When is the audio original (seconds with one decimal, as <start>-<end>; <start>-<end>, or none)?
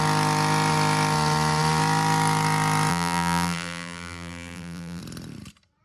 0.0-2.9; 5.0-5.8